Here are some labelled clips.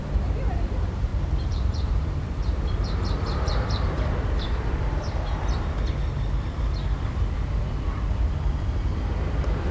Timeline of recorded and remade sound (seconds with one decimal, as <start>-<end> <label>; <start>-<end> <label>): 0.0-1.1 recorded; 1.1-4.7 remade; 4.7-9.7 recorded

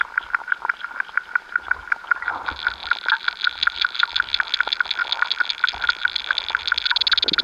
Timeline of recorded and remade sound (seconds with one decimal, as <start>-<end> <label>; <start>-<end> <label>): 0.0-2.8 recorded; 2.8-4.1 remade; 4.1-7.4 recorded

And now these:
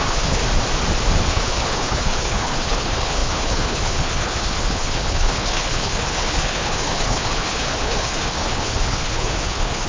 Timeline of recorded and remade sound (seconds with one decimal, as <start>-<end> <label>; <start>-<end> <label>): 0.0-0.4 remade; 0.4-1.3 recorded; 1.3-9.9 remade